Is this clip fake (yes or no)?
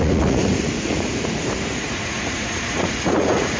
yes